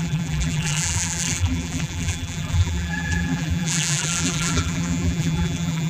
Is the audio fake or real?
fake